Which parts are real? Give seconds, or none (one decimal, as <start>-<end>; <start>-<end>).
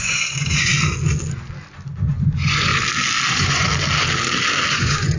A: 0.7-2.1; 2.7-3.3; 3.7-4.7